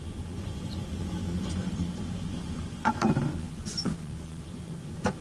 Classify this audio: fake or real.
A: fake